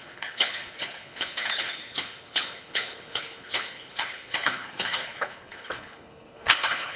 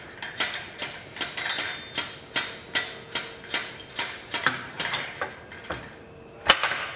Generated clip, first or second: first